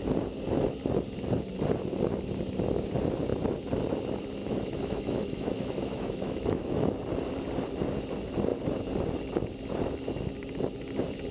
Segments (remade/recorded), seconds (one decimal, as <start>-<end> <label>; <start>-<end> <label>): 0.0-4.4 recorded; 4.4-6.9 remade; 6.9-11.3 recorded